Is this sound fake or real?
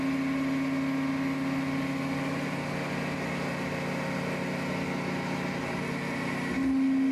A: real